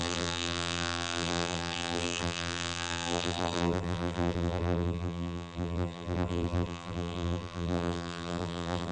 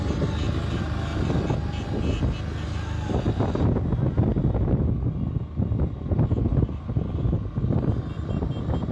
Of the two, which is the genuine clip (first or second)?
second